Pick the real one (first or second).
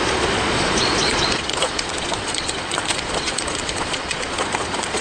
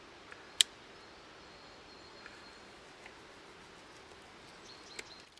second